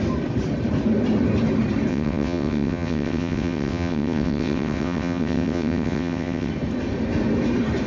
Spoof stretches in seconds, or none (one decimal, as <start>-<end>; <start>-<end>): 1.9-6.5